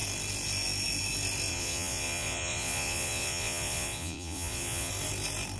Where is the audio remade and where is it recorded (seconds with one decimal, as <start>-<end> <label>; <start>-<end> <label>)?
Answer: 0.0-1.5 recorded; 1.5-4.9 remade; 4.9-5.6 recorded